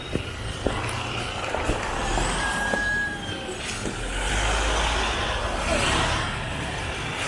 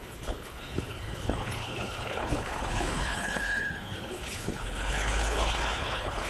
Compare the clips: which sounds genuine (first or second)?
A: first